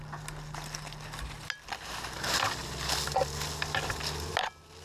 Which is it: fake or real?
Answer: real